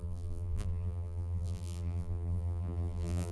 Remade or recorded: remade